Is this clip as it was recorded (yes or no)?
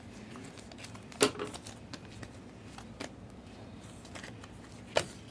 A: yes